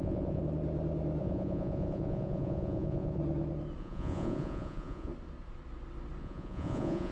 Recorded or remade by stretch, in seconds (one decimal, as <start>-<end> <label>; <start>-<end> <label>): 0.0-0.4 remade; 0.4-1.2 recorded; 1.2-3.2 remade; 3.2-3.8 recorded; 3.8-5.1 remade; 5.1-6.2 recorded; 6.2-7.1 remade

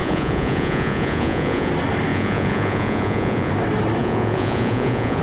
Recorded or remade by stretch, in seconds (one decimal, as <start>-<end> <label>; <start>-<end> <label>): 0.0-1.7 remade; 1.7-2.1 recorded; 2.1-3.5 remade; 3.5-4.0 recorded; 4.0-5.2 remade

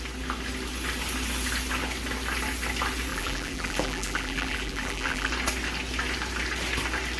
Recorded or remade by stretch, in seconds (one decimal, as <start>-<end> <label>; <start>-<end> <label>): 0.0-3.1 recorded; 3.1-5.3 remade; 5.3-7.2 recorded

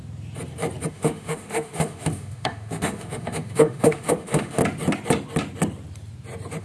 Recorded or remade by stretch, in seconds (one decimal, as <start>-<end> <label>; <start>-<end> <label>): 0.0-0.9 recorded; 0.9-4.6 remade; 4.6-6.6 recorded

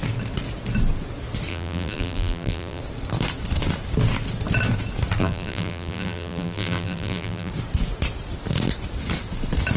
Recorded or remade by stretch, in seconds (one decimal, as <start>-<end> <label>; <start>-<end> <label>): 0.0-1.5 recorded; 1.5-2.8 remade; 2.8-5.2 recorded; 5.2-7.5 remade; 7.5-9.8 recorded